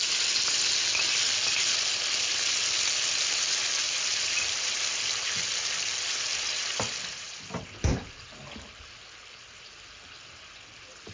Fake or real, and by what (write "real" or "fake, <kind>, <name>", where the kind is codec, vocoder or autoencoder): real